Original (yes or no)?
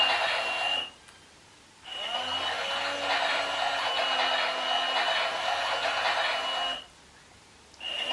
yes